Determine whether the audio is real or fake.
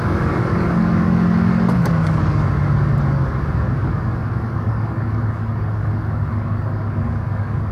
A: fake